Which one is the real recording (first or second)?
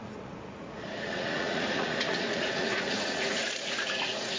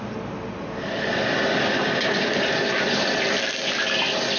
second